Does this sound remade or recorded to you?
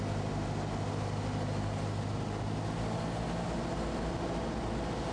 recorded